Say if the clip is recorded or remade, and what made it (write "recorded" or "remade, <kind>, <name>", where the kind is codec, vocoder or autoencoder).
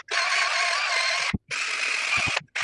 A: recorded